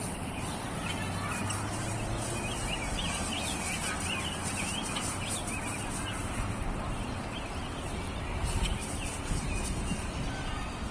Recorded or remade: recorded